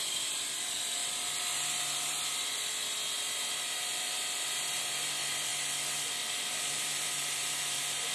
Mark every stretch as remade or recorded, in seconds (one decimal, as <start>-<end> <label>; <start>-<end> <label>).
0.0-5.5 remade; 5.5-6.4 recorded; 6.4-8.1 remade